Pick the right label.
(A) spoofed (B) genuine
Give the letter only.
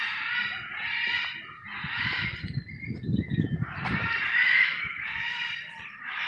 B